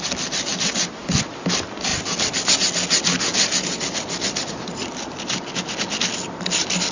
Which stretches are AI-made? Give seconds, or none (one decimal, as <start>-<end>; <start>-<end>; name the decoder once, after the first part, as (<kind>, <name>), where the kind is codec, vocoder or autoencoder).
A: none